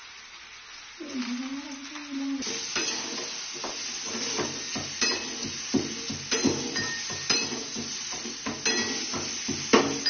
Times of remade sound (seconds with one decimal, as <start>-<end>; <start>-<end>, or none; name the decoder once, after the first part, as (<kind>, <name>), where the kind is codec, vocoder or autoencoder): none